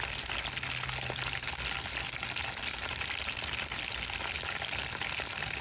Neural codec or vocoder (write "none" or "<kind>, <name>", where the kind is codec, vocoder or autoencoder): none